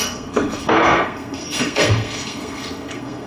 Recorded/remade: remade